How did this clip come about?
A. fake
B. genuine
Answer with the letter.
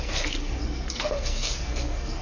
A